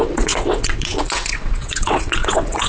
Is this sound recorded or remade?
remade